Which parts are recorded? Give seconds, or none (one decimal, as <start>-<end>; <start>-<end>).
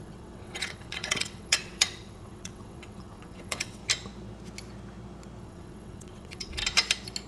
3.8-5.4; 6.6-7.3